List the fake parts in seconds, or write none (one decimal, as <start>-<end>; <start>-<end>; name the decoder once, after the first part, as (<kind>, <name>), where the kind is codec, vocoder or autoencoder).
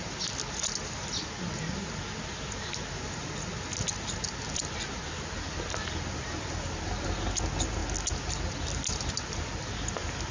none